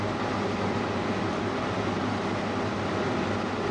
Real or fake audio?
real